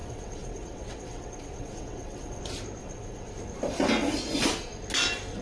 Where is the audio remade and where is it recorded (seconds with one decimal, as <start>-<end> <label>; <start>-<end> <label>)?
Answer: 0.0-2.4 remade; 2.4-2.8 recorded; 2.8-3.3 remade; 3.3-5.4 recorded